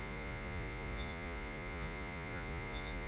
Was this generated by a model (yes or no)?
yes